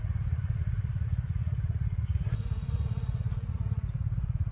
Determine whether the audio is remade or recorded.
remade